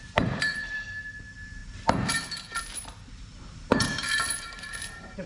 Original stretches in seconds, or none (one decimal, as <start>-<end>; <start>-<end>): none